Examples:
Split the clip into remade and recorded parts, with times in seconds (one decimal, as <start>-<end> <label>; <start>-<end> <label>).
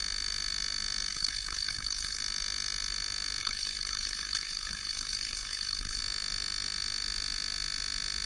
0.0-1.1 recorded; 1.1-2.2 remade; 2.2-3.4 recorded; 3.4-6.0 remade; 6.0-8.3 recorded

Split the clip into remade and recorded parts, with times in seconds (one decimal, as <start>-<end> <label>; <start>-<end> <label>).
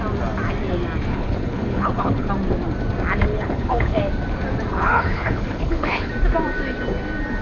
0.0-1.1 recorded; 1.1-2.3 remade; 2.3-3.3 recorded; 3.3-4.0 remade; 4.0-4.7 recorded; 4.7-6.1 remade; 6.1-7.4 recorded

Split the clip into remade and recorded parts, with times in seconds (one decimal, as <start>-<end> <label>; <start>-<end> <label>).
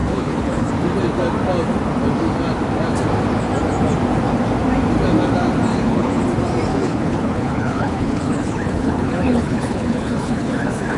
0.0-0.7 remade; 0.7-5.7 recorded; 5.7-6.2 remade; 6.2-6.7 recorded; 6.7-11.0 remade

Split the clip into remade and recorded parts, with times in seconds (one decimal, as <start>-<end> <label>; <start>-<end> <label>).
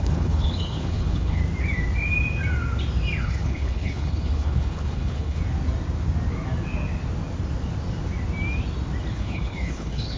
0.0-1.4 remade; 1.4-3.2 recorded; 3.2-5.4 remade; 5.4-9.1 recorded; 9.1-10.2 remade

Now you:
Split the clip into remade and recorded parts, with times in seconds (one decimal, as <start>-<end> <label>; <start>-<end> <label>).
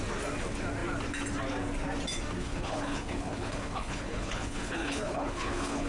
0.0-2.4 recorded; 2.4-5.9 remade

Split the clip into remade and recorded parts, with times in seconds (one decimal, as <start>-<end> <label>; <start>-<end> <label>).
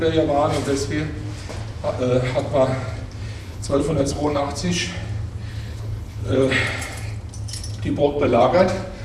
0.0-3.4 recorded; 3.4-4.4 remade; 4.4-5.5 recorded; 5.5-6.5 remade; 6.5-8.0 recorded; 8.0-8.5 remade; 8.5-9.0 recorded